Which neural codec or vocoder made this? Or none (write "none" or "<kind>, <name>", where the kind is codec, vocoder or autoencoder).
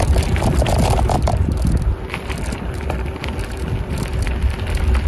none